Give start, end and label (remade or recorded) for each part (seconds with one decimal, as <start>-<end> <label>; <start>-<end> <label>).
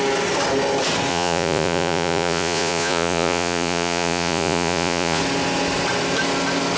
0.0-1.1 recorded; 1.1-5.2 remade; 5.2-6.8 recorded